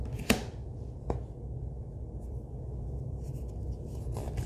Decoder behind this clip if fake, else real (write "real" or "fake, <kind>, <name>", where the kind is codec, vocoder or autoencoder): real